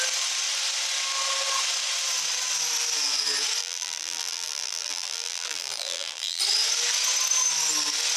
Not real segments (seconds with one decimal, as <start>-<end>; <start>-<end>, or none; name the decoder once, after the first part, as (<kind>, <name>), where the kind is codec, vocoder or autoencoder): 3.6-6.4 (vocoder, BigVGAN v2)